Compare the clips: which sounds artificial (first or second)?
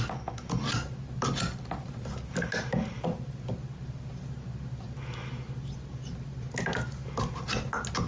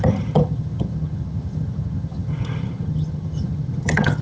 second